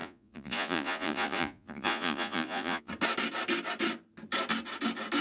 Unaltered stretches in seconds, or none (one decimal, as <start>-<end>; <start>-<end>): 2.9-5.2